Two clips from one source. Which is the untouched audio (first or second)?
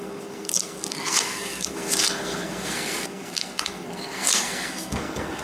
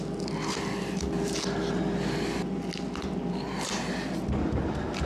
second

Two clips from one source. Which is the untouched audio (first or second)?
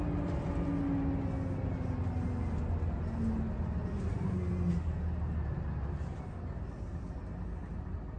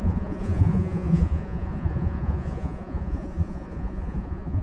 first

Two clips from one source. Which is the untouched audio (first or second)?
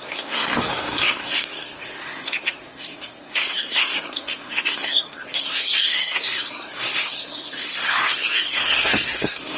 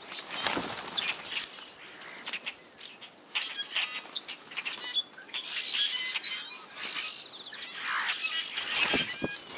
second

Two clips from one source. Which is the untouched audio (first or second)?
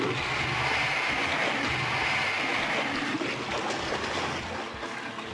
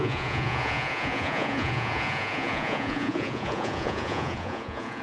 first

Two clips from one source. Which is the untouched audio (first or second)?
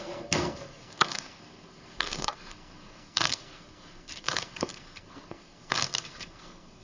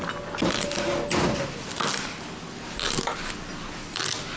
second